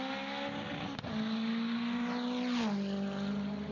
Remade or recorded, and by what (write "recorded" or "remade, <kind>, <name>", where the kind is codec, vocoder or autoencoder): recorded